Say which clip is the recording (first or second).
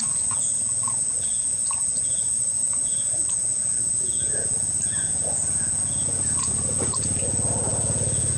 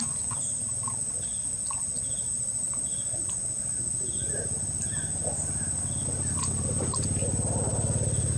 second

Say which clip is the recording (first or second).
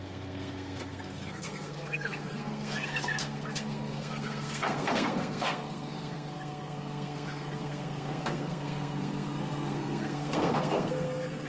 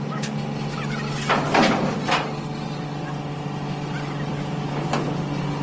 second